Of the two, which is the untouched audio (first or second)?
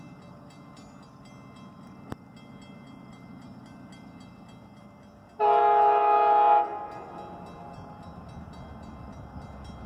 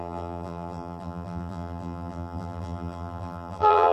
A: first